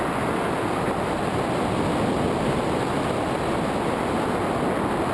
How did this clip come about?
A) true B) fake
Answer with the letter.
A